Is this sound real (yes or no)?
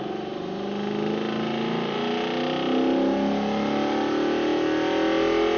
yes